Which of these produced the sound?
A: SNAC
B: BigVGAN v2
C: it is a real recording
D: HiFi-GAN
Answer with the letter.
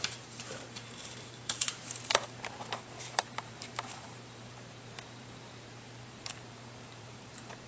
B